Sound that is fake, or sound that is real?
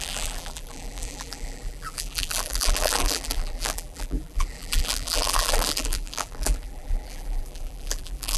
fake